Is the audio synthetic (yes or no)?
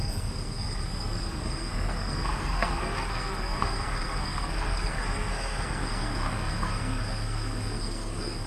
yes